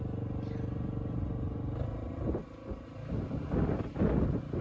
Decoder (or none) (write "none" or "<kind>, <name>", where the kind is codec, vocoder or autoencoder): none